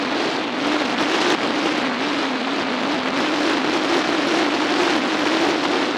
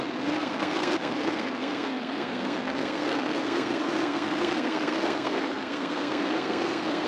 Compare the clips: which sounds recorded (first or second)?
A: first